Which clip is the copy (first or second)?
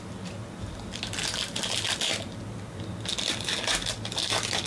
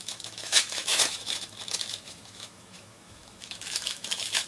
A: second